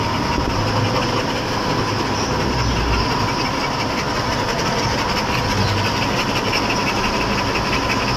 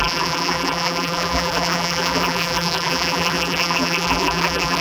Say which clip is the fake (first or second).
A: second